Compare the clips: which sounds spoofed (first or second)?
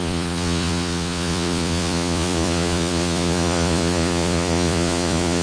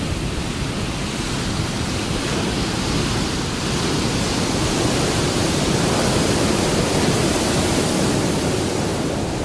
first